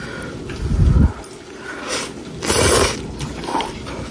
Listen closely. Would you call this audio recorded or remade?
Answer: recorded